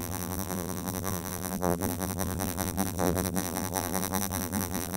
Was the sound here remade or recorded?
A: remade